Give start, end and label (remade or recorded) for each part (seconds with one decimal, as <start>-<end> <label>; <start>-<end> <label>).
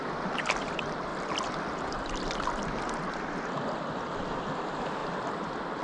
0.0-1.1 recorded; 1.1-3.0 remade; 3.0-5.0 recorded; 5.0-5.8 remade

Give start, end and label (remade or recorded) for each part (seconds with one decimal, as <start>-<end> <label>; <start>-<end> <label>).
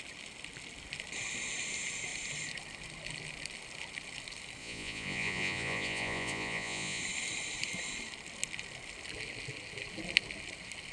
0.0-4.6 recorded; 4.6-7.0 remade; 7.0-10.9 recorded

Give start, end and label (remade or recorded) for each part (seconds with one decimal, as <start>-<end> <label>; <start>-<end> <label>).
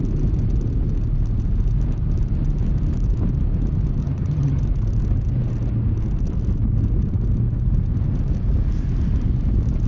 0.0-4.0 recorded; 4.0-4.6 remade; 4.6-9.9 recorded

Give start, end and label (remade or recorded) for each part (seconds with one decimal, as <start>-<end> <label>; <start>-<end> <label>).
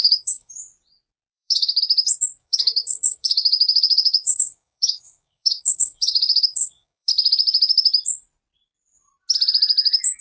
0.0-0.5 remade; 0.5-1.3 recorded; 1.3-1.8 remade; 1.8-2.4 recorded; 2.4-7.1 remade; 7.1-10.2 recorded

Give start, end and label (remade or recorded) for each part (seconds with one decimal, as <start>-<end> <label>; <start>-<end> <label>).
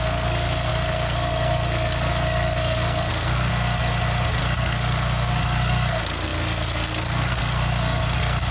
0.0-3.5 remade; 3.5-4.4 recorded; 4.4-8.5 remade